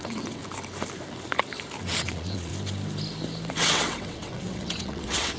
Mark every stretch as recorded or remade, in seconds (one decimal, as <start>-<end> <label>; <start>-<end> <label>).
0.0-0.4 remade; 0.4-1.8 recorded; 1.8-2.5 remade; 2.5-3.5 recorded; 3.5-5.4 remade